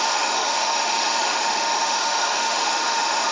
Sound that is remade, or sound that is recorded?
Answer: remade